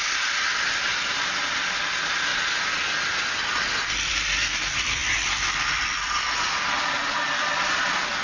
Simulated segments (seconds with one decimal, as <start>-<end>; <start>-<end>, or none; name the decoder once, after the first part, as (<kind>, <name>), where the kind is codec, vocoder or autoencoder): none